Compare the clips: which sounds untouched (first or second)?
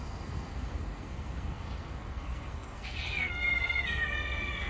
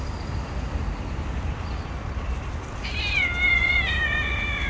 second